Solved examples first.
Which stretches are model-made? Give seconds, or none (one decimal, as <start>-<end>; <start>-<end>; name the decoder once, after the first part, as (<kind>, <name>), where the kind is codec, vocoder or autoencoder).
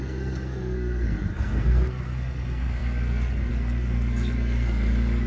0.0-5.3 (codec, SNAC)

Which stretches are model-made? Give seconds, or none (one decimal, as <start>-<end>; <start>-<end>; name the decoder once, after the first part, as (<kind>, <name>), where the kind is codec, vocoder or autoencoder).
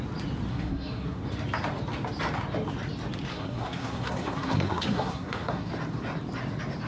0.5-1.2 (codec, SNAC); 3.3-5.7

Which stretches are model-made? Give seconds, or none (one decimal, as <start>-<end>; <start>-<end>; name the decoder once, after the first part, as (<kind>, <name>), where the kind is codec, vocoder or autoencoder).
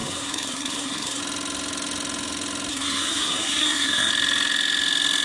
0.0-1.2 (codec, SNAC); 2.7-4.1